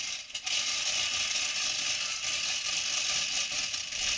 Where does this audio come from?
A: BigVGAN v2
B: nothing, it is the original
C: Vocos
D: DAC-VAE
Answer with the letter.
B